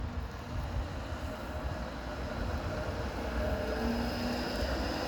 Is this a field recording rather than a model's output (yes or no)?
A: yes